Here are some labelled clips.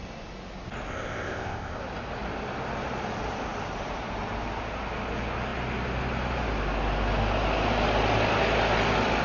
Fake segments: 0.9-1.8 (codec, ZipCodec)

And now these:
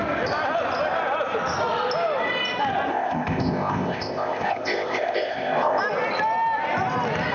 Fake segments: 2.9-5.8 (codec, ZipCodec)

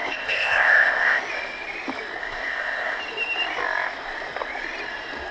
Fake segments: 0.0-1.2 (codec, ZipCodec); 2.2-3.0

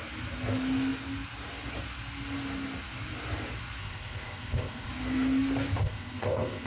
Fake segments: 3.8-4.9 (codec, ZipCodec); 5.8-6.7

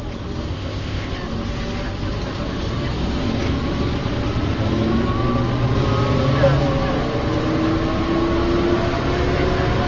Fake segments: 0.5-1.1 (codec, ZipCodec)

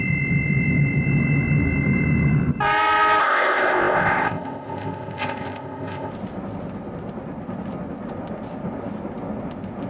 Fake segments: 3.2-6.1 (codec, ZipCodec)